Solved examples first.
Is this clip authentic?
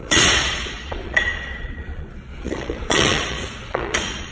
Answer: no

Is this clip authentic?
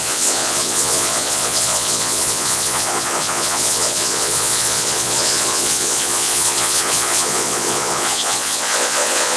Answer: no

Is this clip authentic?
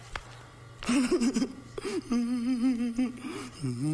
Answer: yes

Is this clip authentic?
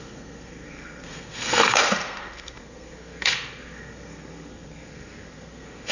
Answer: no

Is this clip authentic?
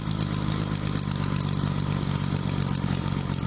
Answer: yes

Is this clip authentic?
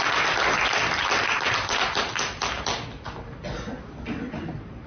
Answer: yes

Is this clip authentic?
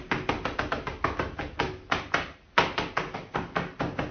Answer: yes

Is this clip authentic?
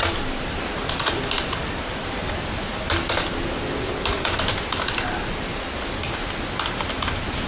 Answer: yes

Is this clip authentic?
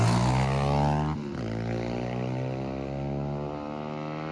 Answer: yes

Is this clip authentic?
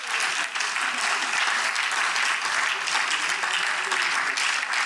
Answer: yes